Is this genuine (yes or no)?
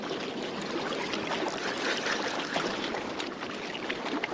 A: yes